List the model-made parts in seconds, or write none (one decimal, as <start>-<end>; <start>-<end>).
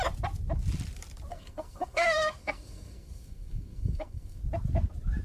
1.3-4.4